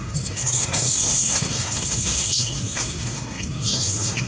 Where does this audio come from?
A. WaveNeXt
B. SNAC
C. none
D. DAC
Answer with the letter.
B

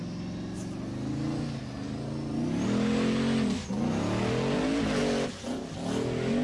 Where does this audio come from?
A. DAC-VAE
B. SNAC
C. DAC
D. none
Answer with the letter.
D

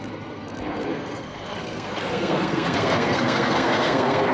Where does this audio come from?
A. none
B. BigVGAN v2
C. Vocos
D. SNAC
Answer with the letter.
D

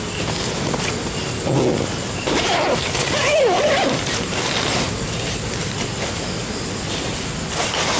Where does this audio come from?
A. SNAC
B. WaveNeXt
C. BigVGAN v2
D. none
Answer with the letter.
D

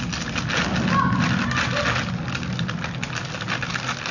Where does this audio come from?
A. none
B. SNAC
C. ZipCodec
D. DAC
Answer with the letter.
A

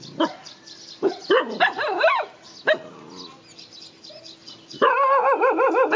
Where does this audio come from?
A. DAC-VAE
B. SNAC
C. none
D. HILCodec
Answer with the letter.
C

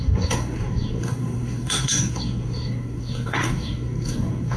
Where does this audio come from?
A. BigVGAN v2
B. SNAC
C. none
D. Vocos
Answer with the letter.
B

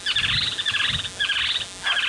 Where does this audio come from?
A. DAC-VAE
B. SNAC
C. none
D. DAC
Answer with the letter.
C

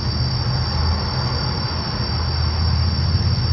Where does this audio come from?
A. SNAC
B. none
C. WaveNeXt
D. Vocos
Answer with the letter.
B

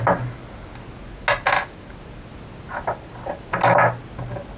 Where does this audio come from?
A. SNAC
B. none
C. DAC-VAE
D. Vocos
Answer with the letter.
B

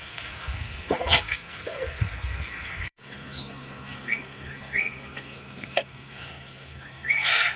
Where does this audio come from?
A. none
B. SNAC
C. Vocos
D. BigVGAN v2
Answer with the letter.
B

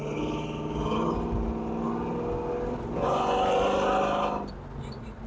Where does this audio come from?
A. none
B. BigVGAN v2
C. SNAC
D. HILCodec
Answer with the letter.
A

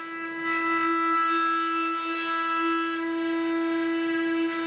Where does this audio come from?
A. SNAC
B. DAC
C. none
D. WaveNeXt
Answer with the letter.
C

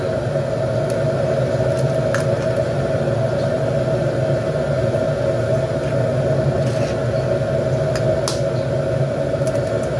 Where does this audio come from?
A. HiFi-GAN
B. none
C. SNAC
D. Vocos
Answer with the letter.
B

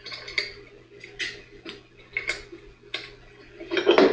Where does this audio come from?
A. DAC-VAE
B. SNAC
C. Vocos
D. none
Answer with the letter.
D